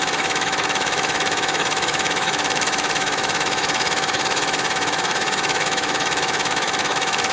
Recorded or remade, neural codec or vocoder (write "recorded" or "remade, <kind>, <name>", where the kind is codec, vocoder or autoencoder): remade, autoencoder, DAC-VAE